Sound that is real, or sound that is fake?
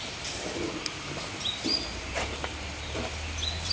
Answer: real